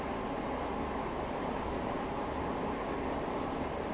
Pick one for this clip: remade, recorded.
recorded